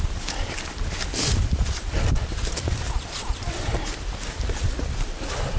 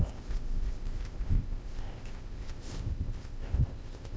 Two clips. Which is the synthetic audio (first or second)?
second